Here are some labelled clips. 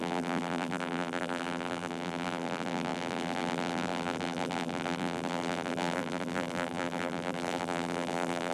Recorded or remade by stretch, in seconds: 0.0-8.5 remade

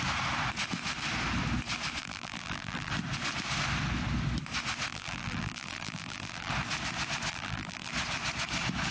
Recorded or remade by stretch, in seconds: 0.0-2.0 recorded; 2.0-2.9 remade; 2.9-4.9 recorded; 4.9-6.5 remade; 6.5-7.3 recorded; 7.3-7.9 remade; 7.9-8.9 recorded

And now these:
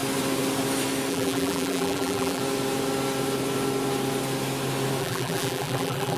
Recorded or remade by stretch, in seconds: 0.0-1.1 recorded; 1.1-2.4 remade; 2.4-5.0 recorded; 5.0-6.2 remade

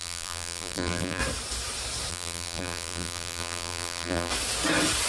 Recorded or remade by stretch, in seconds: 0.0-1.2 remade; 1.2-2.1 recorded; 2.1-4.3 remade; 4.3-5.1 recorded

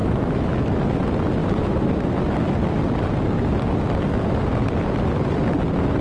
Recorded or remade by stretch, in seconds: 0.0-0.5 remade; 0.5-1.4 recorded; 1.4-2.0 remade; 2.0-6.0 recorded

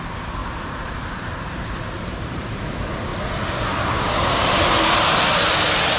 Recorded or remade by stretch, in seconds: 0.0-0.4 recorded; 0.4-2.7 remade; 2.7-6.0 recorded